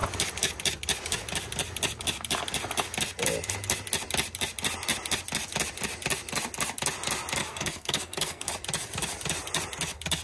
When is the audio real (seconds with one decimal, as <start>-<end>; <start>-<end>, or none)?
0.0-7.4; 8.5-10.2